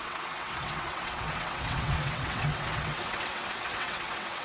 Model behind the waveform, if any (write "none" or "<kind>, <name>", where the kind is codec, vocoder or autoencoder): vocoder, WaveNeXt